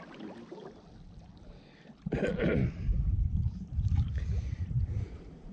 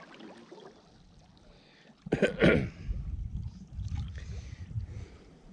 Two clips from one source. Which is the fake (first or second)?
first